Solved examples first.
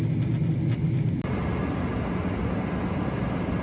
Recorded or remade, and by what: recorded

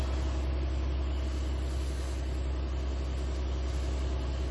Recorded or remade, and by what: recorded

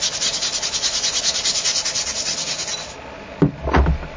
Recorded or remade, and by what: recorded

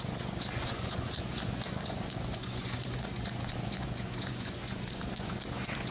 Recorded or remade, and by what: remade, vocoder, Vocos